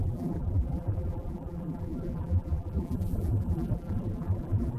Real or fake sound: fake